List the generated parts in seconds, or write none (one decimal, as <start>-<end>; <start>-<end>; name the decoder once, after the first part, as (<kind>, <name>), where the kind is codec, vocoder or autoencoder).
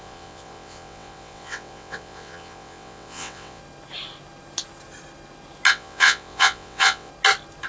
0.0-3.6 (vocoder, WaveNeXt); 5.7-7.1